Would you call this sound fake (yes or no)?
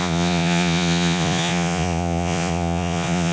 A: yes